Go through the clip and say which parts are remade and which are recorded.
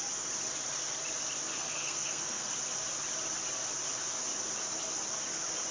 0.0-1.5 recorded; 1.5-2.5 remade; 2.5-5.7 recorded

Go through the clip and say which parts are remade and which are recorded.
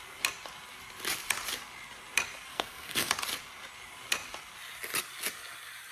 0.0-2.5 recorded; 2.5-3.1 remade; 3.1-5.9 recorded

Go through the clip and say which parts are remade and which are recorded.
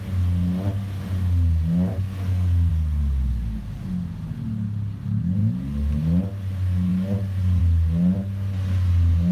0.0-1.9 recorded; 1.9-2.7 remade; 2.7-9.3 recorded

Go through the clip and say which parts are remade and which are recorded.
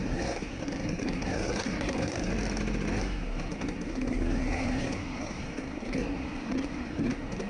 0.0-2.3 remade; 2.3-3.0 recorded; 3.0-7.5 remade